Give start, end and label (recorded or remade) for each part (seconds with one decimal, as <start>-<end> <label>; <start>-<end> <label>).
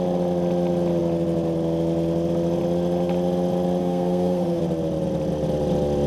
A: 0.0-3.8 recorded; 3.8-4.6 remade; 4.6-6.1 recorded